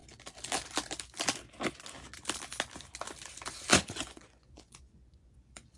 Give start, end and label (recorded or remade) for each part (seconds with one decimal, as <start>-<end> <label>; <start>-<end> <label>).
0.0-3.7 recorded; 3.7-5.8 remade